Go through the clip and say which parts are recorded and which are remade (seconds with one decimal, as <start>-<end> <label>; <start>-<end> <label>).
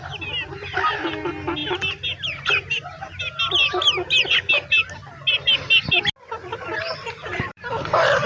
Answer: 0.0-6.5 recorded; 6.5-8.3 remade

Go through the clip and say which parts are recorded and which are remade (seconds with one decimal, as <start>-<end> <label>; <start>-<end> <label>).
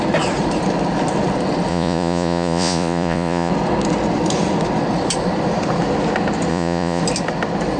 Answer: 0.0-1.7 recorded; 1.7-3.5 remade; 3.5-6.5 recorded; 6.5-7.0 remade; 7.0-7.8 recorded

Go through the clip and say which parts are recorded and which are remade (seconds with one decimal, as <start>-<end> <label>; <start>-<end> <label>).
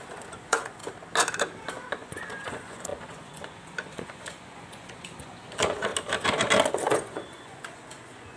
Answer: 0.0-0.8 remade; 0.8-1.9 recorded; 1.9-5.9 remade; 5.9-6.7 recorded; 6.7-8.4 remade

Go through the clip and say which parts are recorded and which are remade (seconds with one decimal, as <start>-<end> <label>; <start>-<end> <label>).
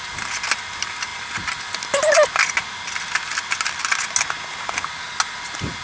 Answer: 0.0-5.8 recorded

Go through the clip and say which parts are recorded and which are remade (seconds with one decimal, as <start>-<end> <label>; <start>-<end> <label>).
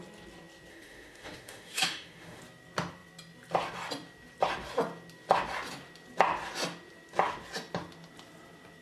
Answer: 0.0-0.7 recorded; 0.7-2.4 remade; 2.4-8.8 recorded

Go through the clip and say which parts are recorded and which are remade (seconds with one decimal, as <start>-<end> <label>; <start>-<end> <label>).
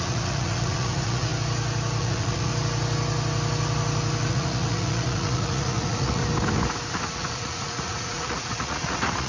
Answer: 0.0-1.3 remade; 1.3-2.0 recorded; 2.0-2.5 remade; 2.5-4.3 recorded; 4.3-6.2 remade; 6.2-6.9 recorded; 6.9-9.3 remade